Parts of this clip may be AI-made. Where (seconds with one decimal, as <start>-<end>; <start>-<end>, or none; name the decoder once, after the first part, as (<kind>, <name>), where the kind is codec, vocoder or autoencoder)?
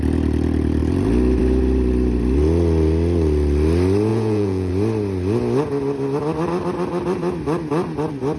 4.1-4.7 (vocoder, Vocos)